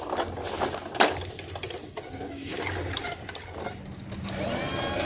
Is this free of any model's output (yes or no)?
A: yes